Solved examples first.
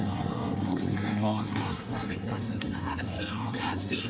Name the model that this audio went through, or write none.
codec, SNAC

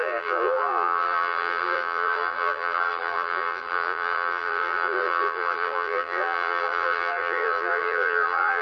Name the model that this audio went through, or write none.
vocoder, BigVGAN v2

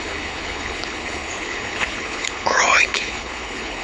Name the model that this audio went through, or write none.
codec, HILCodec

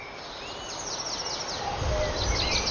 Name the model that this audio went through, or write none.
none